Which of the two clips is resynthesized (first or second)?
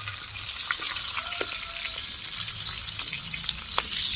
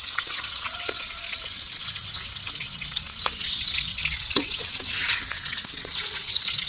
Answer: second